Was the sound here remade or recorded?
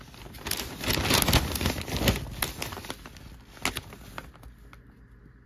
recorded